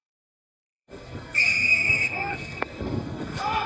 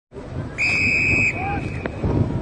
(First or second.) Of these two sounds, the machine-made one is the first